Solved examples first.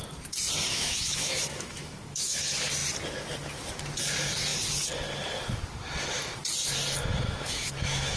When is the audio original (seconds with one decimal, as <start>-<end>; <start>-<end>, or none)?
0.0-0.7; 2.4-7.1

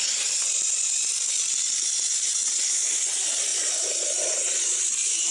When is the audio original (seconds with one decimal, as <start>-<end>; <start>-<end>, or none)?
0.0-5.3

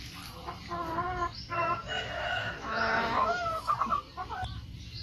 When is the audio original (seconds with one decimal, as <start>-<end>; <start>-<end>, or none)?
0.0-1.6; 3.7-5.0